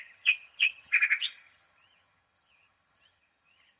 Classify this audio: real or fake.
fake